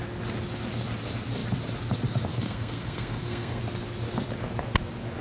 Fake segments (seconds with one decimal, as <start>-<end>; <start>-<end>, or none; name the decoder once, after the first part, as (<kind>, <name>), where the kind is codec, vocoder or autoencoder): 2.3-3.6 (codec, SNAC)